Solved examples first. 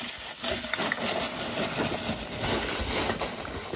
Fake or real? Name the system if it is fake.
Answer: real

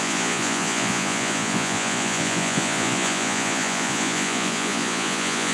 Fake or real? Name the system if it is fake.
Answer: fake, vocoder, Vocos